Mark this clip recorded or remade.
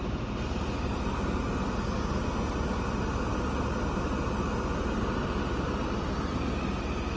recorded